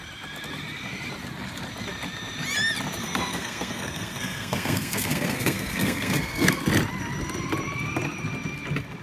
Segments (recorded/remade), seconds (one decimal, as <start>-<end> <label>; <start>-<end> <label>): 0.0-3.0 recorded; 3.0-6.6 remade; 6.6-9.0 recorded